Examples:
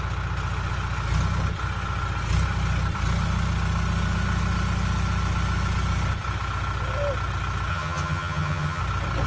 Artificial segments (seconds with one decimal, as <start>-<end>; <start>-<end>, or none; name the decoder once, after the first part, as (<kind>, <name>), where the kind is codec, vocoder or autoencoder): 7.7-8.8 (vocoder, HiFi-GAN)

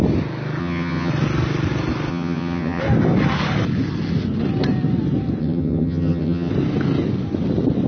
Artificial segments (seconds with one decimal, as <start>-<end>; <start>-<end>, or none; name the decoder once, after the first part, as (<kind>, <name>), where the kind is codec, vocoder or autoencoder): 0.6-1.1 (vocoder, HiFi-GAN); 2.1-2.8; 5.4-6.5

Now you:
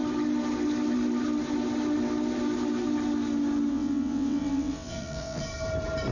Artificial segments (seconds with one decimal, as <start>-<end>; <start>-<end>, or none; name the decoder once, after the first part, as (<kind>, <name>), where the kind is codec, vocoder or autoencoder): 3.7-5.4 (vocoder, WaveNeXt)